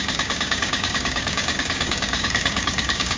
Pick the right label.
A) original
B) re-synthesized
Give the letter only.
B